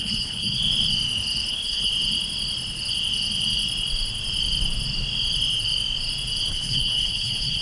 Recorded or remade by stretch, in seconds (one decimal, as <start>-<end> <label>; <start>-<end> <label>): 0.0-0.6 remade; 0.6-1.5 recorded; 1.5-1.9 remade; 1.9-6.5 recorded; 6.5-7.6 remade